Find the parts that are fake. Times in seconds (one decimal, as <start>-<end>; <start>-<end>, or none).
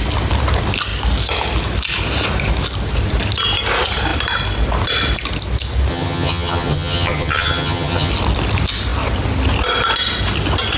5.9-8.1